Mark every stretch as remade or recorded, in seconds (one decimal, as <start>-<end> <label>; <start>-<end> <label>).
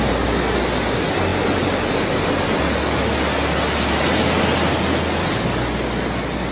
0.0-6.5 recorded